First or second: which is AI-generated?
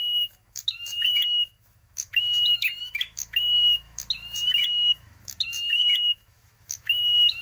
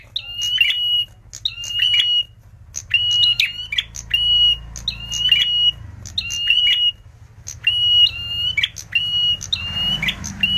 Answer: first